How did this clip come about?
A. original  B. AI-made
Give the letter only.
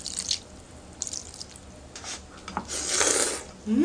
A